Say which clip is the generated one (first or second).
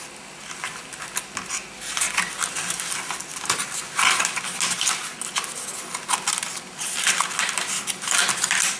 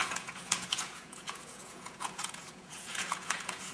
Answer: second